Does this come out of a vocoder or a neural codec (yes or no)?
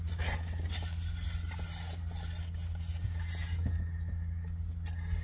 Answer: no